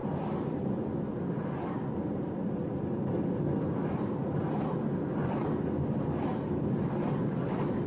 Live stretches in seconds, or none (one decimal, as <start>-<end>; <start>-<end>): 0.0-7.9